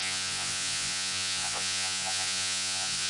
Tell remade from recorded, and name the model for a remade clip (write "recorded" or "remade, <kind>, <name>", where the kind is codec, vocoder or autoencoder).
remade, vocoder, Vocos